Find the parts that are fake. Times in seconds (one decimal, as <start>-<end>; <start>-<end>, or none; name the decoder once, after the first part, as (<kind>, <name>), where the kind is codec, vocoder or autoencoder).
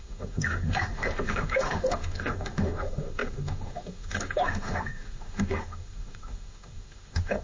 0.0-7.4 (autoencoder, DAC-VAE)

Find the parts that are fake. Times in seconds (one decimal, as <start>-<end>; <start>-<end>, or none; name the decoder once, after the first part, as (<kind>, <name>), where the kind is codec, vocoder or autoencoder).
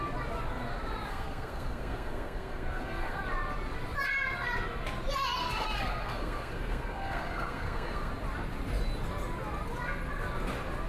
1.1-3.2 (codec, SNAC); 5.4-8.1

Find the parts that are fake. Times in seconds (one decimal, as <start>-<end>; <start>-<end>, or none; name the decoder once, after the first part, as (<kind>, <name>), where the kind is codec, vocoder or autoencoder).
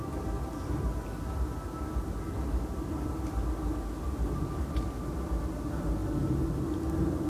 none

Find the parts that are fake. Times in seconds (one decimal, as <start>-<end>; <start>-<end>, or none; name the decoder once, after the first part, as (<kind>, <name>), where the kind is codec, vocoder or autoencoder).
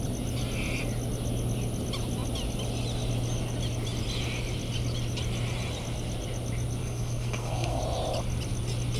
6.8-7.8 (codec, SNAC)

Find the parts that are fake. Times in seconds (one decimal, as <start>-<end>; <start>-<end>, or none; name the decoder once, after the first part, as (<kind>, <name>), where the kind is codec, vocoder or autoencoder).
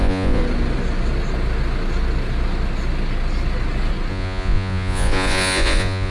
0.0-0.4 (vocoder, Vocos); 4.1-6.1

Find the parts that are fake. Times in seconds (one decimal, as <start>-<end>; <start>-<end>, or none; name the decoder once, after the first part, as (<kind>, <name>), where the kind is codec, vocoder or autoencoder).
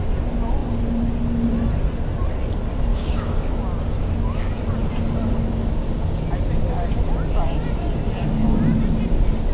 2.9-3.6 (codec, DAC)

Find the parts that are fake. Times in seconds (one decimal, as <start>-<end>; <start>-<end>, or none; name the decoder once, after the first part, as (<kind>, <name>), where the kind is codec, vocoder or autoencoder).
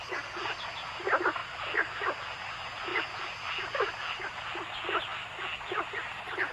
none